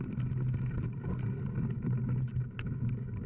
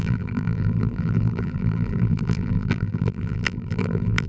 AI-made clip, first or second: second